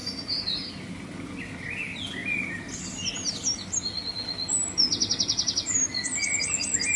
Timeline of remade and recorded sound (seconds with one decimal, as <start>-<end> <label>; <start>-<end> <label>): 0.0-7.0 recorded